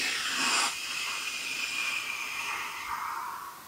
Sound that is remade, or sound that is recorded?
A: remade